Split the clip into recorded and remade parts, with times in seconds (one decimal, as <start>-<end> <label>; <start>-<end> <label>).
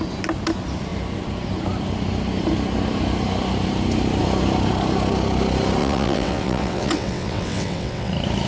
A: 0.0-5.8 recorded; 5.8-8.1 remade; 8.1-8.5 recorded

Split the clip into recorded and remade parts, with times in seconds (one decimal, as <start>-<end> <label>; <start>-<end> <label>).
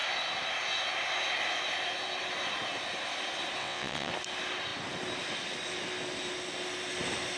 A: 0.0-3.6 recorded; 3.6-4.1 remade; 4.1-7.4 recorded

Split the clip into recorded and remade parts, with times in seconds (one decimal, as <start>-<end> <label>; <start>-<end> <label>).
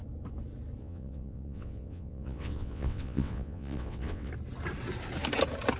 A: 0.0-0.8 recorded; 0.8-4.3 remade; 4.3-5.8 recorded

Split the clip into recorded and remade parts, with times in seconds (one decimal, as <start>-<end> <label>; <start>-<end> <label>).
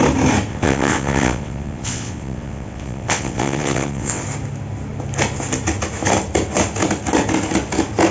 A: 0.0-0.5 recorded; 0.5-4.2 remade; 4.2-8.1 recorded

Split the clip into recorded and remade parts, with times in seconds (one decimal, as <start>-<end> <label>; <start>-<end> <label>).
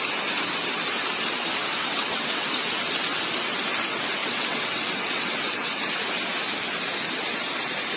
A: 0.0-1.8 recorded; 1.8-2.5 remade; 2.5-4.2 recorded; 4.2-5.8 remade; 5.8-8.0 recorded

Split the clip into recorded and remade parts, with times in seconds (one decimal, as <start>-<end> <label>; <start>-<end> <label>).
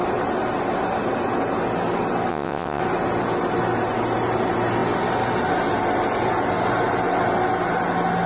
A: 0.0-2.3 recorded; 2.3-2.8 remade; 2.8-8.3 recorded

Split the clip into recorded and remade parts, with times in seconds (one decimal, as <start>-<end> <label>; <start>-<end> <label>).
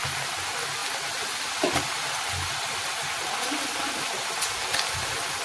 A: 0.0-5.4 recorded